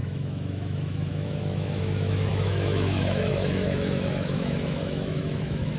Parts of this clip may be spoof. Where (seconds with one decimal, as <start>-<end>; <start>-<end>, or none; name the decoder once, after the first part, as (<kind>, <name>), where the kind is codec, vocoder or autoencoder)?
0.0-5.8 (autoencoder, DAC-VAE)